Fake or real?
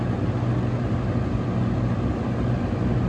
real